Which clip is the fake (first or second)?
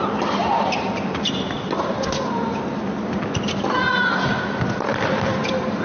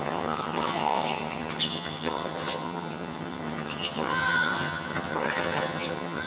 second